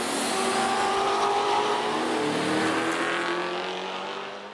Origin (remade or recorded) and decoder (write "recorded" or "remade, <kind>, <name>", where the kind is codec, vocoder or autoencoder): recorded